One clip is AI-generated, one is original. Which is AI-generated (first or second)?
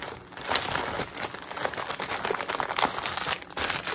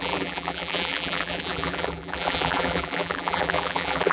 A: second